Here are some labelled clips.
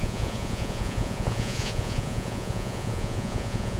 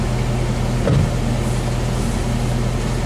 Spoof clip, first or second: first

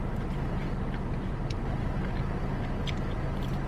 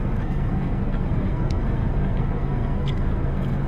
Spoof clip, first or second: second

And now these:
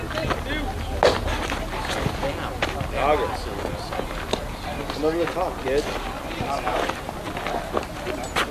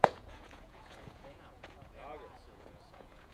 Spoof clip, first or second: second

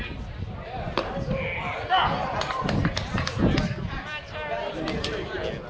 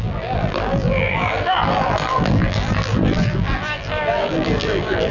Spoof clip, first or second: second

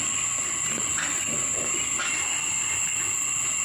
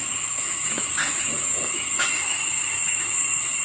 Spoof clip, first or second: second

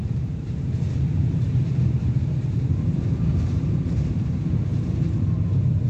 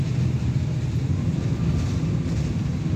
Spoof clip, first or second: first